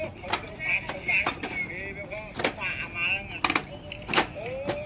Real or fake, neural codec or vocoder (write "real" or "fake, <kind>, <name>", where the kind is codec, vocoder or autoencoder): real